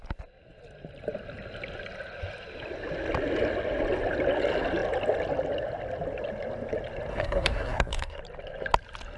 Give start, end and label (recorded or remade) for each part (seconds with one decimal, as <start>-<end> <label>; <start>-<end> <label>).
0.0-7.1 recorded; 7.1-8.2 remade; 8.2-9.2 recorded